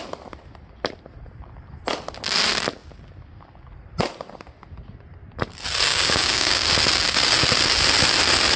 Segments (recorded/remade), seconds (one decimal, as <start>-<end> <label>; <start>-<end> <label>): 0.0-5.9 recorded; 5.9-6.7 remade; 6.7-8.6 recorded